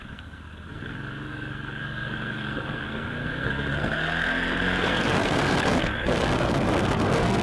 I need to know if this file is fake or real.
fake